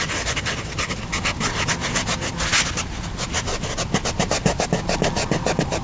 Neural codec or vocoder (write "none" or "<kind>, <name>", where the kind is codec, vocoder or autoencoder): none